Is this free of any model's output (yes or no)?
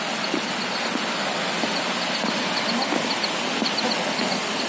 yes